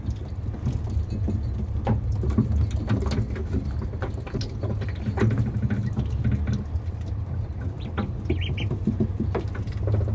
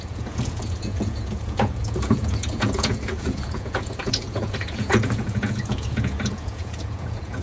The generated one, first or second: second